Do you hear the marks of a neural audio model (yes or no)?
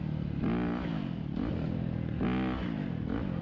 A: no